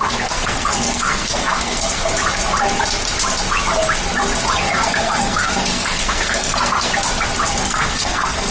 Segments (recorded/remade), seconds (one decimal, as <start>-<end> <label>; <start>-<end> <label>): 0.0-2.1 remade; 2.1-4.6 recorded; 4.6-6.9 remade; 6.9-7.6 recorded; 7.6-8.5 remade